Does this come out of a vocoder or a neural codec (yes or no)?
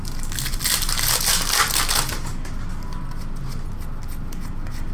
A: no